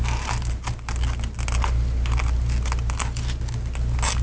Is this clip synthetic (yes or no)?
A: no